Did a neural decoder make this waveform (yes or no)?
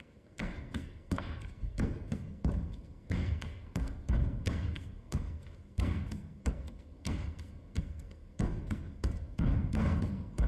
yes